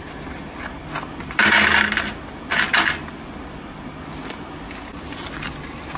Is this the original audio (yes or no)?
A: yes